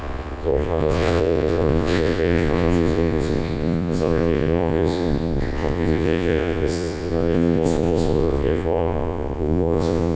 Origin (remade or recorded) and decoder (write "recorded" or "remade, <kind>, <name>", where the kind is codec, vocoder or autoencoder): remade, vocoder, Vocos